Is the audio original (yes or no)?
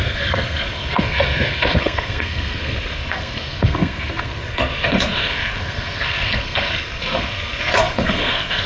no